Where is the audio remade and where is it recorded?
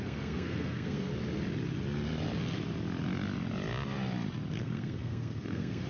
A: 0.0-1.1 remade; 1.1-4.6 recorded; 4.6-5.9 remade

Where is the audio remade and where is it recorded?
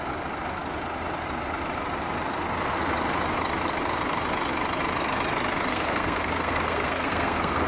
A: 0.0-5.7 recorded; 5.7-7.7 remade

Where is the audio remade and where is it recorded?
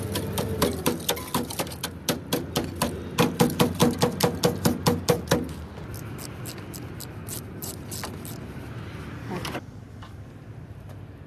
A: 0.0-9.2 recorded; 9.2-10.3 remade; 10.3-11.3 recorded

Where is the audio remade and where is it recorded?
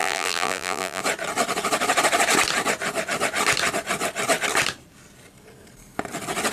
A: 0.0-1.0 remade; 1.0-6.5 recorded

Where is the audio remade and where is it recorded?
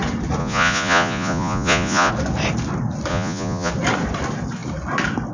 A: 0.0-0.4 recorded; 0.4-2.1 remade; 2.1-3.1 recorded; 3.1-3.7 remade; 3.7-5.3 recorded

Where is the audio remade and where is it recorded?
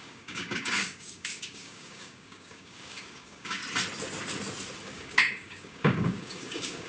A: 0.0-3.6 remade; 3.6-4.8 recorded; 4.8-6.9 remade